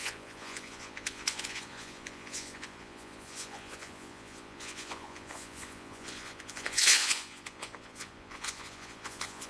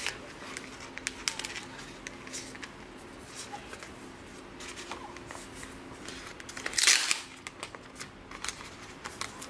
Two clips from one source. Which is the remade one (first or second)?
first